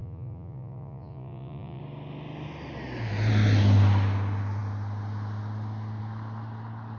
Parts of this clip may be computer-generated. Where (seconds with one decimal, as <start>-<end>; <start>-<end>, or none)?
0.0-1.8